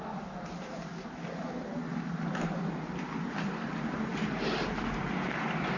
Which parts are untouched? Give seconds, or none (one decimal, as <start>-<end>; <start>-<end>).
0.0-4.1; 4.8-5.8